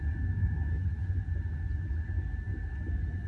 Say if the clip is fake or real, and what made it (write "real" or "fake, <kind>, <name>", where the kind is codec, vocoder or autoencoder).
real